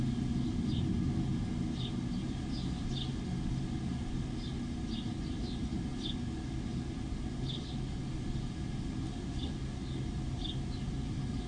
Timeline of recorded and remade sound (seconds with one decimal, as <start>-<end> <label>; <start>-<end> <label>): 0.0-11.5 recorded